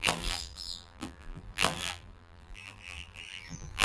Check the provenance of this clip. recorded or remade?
remade